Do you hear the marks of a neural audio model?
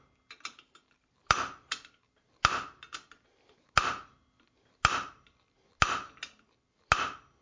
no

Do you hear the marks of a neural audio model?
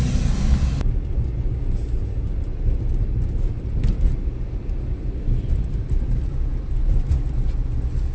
no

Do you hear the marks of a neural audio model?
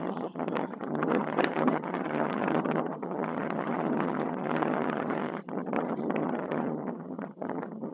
yes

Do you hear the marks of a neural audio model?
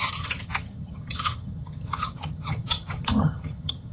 yes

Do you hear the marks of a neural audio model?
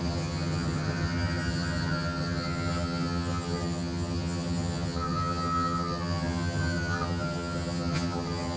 yes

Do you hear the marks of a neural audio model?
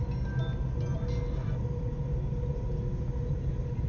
no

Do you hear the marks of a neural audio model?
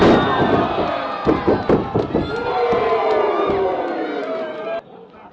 no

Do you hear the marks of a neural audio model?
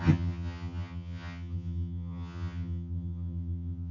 yes